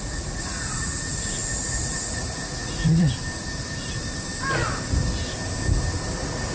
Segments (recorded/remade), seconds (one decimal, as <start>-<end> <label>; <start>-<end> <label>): 0.0-3.1 remade; 3.1-6.1 recorded; 6.1-6.5 remade